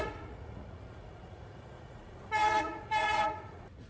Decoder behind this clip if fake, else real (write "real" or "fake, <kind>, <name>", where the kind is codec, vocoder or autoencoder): fake, vocoder, Vocos